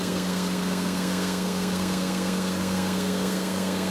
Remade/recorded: remade